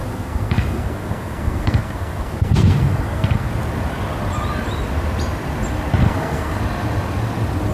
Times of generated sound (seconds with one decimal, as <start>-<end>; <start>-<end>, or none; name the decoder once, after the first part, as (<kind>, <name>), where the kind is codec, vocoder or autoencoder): 0.0-3.5 (codec, SNAC); 6.0-6.6